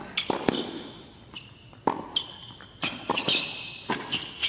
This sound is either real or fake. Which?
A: real